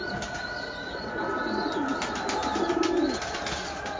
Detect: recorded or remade recorded